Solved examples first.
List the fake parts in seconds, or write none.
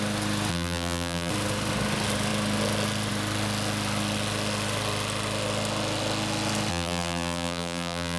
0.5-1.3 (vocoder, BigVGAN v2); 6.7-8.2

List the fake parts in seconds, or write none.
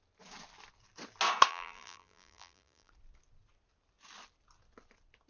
1.5-2.9 (vocoder, BigVGAN v2)